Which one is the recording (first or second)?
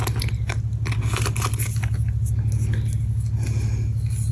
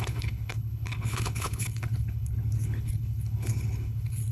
first